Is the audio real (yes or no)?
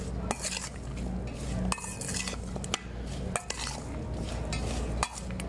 yes